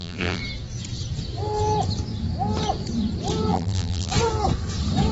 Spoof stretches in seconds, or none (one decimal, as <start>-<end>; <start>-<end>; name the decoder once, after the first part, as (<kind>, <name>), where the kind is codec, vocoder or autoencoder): 0.0-0.4 (vocoder, BigVGAN v2); 3.5-4.1